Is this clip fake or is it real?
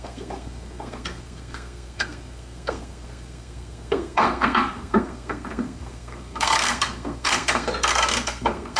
fake